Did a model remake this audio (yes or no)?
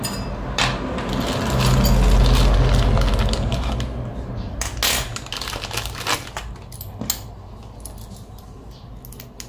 no